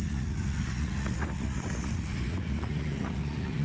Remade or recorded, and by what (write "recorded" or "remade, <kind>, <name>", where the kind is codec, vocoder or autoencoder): remade, vocoder, Vocos